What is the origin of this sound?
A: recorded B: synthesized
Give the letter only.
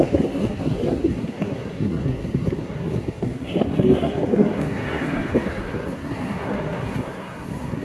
B